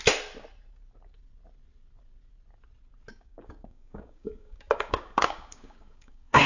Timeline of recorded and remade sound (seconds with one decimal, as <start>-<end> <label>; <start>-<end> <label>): 0.0-3.1 recorded; 3.1-6.5 remade